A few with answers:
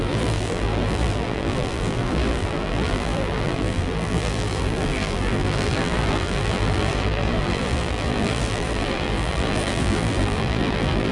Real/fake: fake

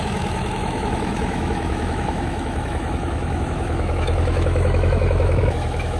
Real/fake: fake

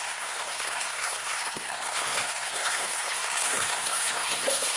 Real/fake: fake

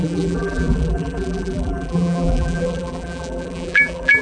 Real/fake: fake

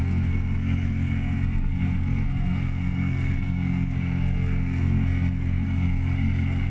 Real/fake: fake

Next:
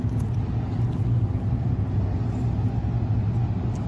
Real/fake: real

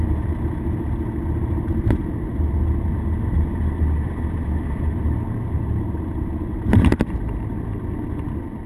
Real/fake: real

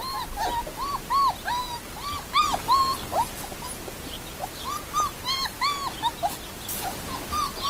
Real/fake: real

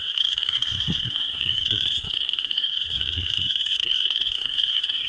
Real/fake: fake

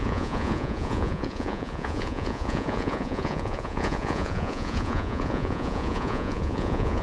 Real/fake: fake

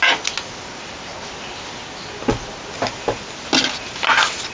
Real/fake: real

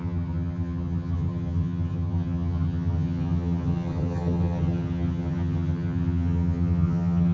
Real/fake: fake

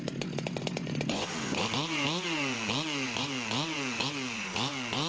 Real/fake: fake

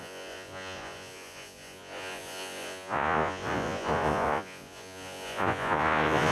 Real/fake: fake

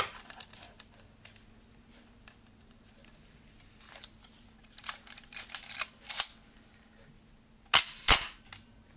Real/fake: real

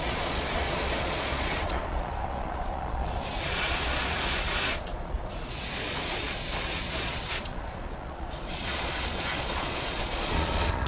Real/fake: fake